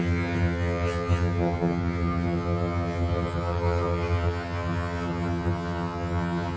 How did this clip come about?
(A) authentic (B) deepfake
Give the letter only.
B